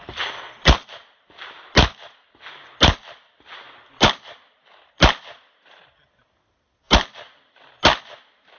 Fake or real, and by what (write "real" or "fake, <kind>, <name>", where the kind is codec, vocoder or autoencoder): real